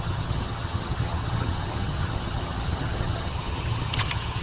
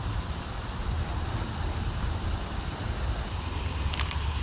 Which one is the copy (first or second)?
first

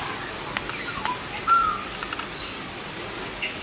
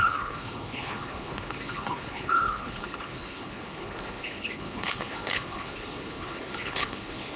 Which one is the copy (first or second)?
second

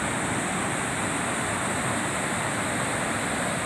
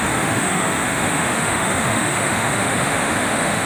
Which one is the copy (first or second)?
second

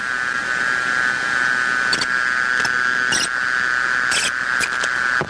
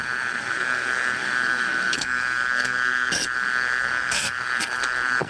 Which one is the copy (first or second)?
second